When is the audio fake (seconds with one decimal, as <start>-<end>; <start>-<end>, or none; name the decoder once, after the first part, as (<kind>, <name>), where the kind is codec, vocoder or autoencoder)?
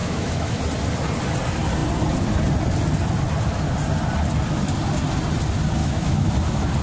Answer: 0.0-0.6 (autoencoder, DAC-VAE); 5.8-6.3